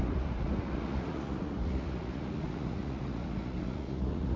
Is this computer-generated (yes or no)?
yes